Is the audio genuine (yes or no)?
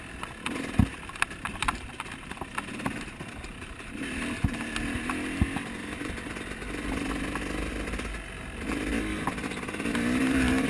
yes